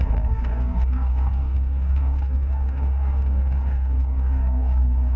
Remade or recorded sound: remade